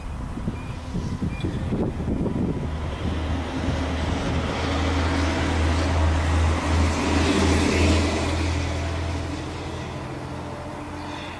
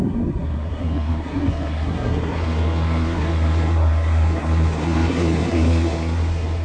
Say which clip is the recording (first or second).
first